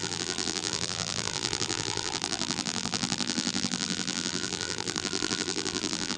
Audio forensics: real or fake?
fake